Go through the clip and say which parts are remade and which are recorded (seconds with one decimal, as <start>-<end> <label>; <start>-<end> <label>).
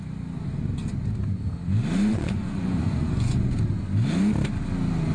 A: 0.0-2.1 recorded; 2.1-3.6 remade; 3.6-5.1 recorded